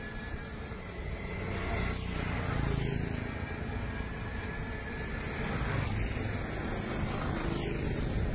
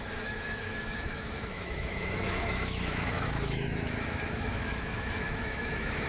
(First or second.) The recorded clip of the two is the first